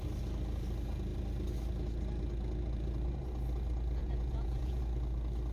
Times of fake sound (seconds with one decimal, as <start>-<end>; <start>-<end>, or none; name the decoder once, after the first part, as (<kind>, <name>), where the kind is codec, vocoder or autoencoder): 4.0-4.8 (vocoder, Vocos)

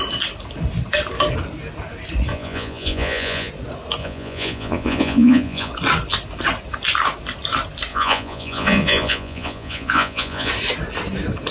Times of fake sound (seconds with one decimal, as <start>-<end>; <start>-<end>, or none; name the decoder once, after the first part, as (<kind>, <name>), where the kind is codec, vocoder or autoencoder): 2.3-3.5 (vocoder, Vocos); 4.0-5.7; 7.9-10.5

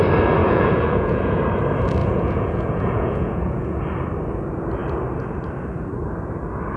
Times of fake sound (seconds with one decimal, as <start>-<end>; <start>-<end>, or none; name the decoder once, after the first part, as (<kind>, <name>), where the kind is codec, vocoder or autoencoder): 0.4-1.4 (vocoder, Vocos); 2.0-3.8